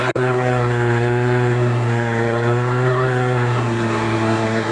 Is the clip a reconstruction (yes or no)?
yes